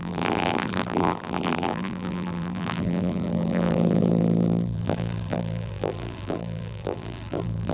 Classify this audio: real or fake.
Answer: fake